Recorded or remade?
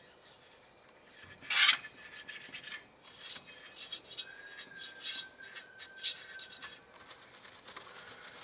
recorded